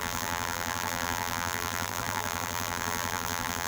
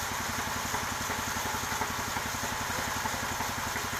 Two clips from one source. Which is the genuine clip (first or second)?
second